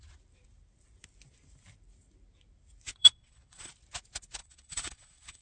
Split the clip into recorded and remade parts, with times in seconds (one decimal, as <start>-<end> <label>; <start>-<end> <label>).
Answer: 0.0-3.0 recorded; 3.0-3.7 remade; 3.7-4.4 recorded; 4.4-5.4 remade